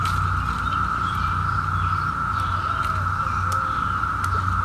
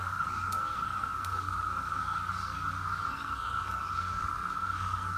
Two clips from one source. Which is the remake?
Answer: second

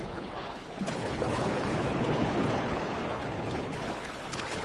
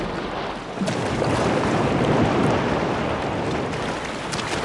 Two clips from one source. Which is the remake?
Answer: first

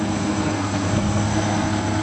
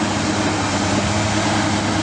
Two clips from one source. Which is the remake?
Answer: first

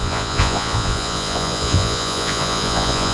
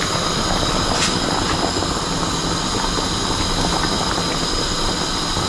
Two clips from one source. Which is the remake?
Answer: first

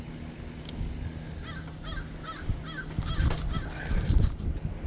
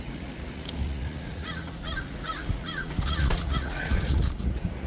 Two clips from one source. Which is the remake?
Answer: second